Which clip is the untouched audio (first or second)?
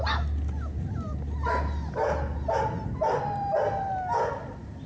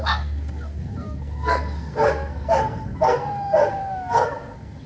first